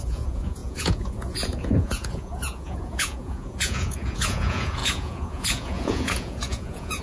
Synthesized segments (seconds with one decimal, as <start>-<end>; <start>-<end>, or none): 0.0-7.0